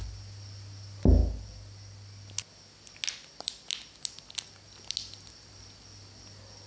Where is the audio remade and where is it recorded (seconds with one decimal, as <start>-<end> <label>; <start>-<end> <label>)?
0.0-6.7 recorded